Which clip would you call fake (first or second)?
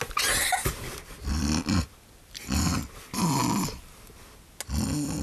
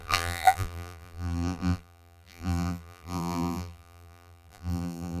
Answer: second